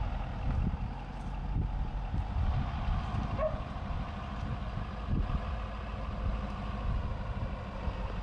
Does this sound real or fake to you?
real